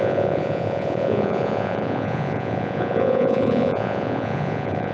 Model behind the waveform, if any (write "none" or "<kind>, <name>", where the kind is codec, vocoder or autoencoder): vocoder, Vocos